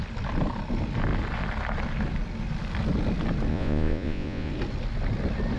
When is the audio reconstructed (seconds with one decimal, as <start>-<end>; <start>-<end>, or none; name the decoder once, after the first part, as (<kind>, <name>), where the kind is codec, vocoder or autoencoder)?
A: 3.5-4.5 (vocoder, Vocos)